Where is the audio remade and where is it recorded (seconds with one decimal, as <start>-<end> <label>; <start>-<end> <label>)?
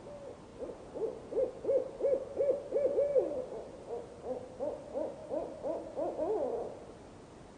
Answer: 0.0-7.6 recorded